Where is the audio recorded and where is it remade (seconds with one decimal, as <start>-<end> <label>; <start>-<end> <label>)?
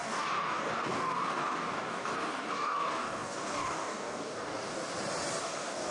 0.0-4.8 remade; 4.8-5.4 recorded; 5.4-5.9 remade